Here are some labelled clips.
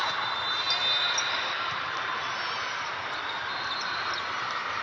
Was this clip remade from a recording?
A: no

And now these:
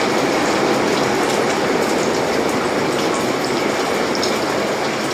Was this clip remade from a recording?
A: no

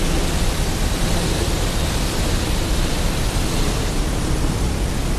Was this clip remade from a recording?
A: no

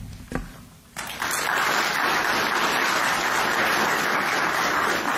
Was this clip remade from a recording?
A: no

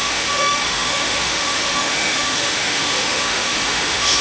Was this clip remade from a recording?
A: yes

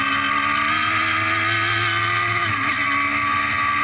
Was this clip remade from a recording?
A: no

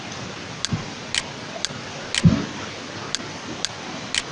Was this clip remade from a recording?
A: no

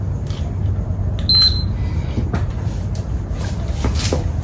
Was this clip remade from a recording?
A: no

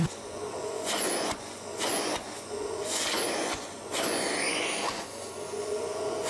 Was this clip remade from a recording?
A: yes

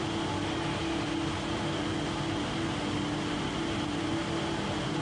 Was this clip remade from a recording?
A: no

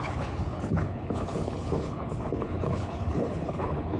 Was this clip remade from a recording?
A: yes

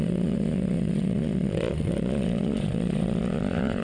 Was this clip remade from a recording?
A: yes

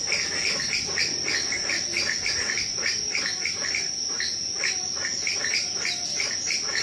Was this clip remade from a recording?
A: no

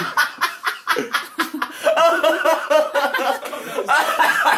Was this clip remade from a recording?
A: yes